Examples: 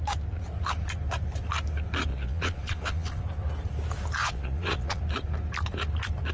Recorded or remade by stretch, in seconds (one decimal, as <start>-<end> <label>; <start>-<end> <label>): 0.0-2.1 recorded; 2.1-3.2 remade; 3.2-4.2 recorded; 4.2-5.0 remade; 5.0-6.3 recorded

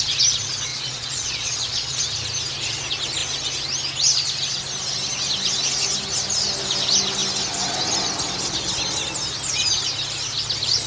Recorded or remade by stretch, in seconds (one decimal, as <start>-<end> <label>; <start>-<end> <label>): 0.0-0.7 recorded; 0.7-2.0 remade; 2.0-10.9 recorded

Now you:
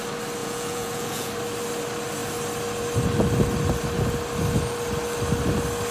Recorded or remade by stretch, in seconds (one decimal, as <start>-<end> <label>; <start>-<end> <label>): 0.0-0.4 recorded; 0.4-1.3 remade; 1.3-5.9 recorded

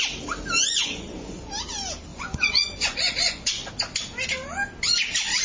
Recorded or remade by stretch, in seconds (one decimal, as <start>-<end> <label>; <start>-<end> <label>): 0.0-0.6 recorded; 0.6-1.5 remade; 1.5-2.1 recorded; 2.1-3.7 remade; 3.7-5.4 recorded

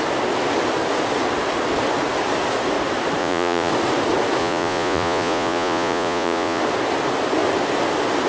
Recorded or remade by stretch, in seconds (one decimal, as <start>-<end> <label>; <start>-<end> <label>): 0.0-3.2 recorded; 3.2-3.7 remade; 3.7-4.4 recorded; 4.4-6.6 remade; 6.6-8.3 recorded

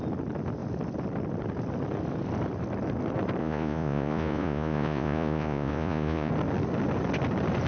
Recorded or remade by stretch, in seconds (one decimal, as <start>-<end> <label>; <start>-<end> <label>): 0.0-3.4 recorded; 3.4-6.3 remade; 6.3-7.7 recorded